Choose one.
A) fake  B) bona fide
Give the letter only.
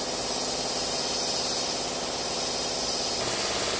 B